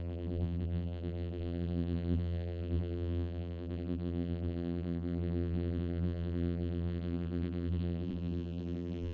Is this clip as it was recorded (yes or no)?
no